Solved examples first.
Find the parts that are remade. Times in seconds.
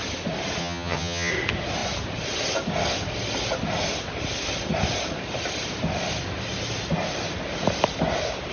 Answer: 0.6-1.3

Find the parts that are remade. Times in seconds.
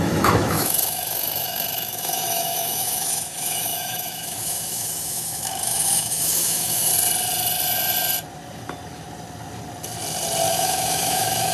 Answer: 0.0-6.9; 10.5-11.5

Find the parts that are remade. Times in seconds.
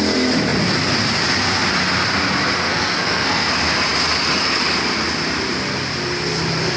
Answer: 2.6-3.5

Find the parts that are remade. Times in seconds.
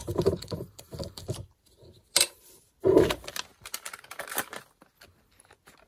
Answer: 0.0-2.6; 3.5-4.2